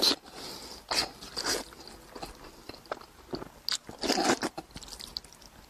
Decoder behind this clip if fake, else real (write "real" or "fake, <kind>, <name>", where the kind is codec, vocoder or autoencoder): real